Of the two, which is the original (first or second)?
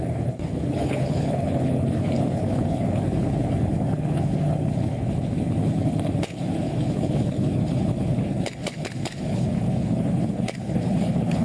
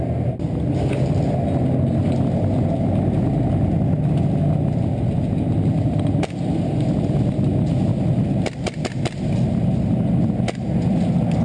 second